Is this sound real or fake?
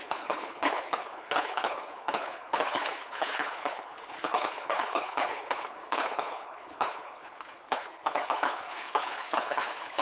fake